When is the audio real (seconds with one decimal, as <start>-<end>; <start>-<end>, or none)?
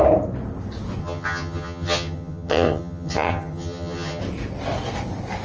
0.0-1.0; 4.2-5.4